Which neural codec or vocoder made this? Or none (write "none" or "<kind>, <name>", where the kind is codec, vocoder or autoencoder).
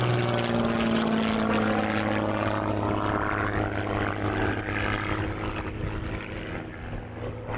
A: none